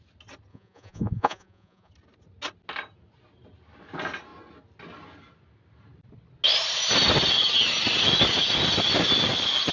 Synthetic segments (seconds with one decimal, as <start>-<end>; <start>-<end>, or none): 0.5-1.9